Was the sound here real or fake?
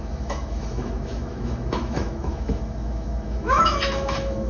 fake